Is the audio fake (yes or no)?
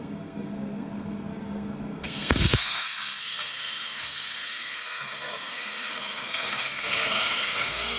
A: yes